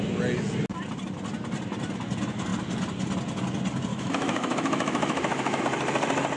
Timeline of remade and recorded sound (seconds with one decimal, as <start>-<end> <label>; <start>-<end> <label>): 0.0-3.9 recorded; 3.9-5.6 remade; 5.6-6.4 recorded